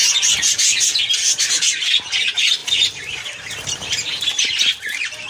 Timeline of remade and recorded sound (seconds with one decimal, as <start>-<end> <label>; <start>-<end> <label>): 0.0-2.0 recorded; 2.0-5.3 remade